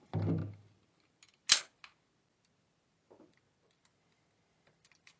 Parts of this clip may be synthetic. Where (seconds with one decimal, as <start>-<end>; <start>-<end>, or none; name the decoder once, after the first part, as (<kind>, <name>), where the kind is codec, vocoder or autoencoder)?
none